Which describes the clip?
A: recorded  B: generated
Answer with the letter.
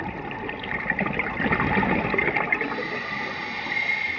A